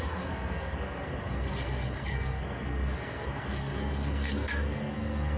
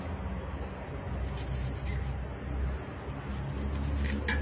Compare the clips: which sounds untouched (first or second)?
second